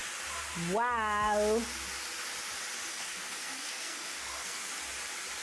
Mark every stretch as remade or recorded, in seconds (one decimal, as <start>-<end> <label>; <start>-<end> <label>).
0.0-2.9 recorded; 2.9-4.7 remade; 4.7-5.4 recorded